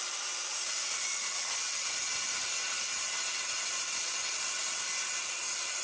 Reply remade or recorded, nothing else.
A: remade